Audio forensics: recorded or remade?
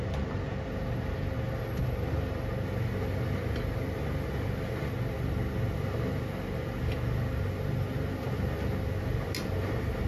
recorded